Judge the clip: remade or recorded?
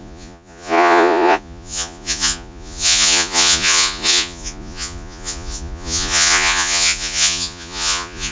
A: remade